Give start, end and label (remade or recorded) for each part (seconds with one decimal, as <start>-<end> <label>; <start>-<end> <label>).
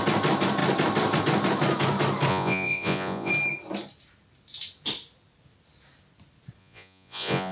0.0-2.3 recorded; 2.3-3.3 remade; 3.3-6.6 recorded; 6.6-7.5 remade